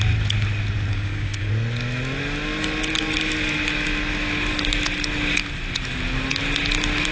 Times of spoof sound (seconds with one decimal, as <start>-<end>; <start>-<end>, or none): 0.9-1.5